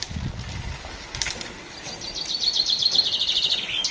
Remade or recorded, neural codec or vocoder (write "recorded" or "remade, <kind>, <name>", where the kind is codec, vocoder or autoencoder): recorded